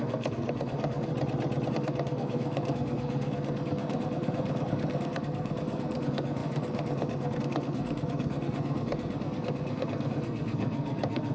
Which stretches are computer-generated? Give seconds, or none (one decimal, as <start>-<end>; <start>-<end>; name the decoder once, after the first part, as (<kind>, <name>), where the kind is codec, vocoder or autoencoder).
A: 0.0-1.1 (codec, SNAC); 1.7-11.3